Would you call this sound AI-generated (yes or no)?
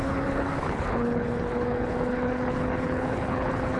yes